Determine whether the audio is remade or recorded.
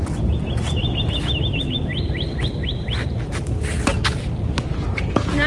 recorded